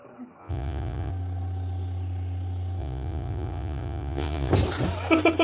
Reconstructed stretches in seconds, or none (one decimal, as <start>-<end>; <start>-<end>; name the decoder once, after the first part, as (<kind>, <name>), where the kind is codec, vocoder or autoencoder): 0.4-1.1 (vocoder, Vocos); 2.8-4.5